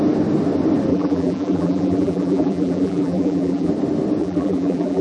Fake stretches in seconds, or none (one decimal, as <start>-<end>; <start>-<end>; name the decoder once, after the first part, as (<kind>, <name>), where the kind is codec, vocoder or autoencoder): 0.9-3.7 (vocoder, BigVGAN v2); 4.2-5.0